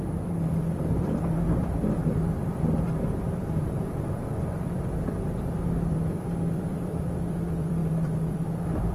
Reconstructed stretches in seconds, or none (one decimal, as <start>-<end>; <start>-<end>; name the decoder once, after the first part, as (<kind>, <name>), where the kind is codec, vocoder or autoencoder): 0.0-8.9 (vocoder, BigVGAN v2)